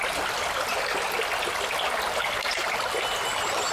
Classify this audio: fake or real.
real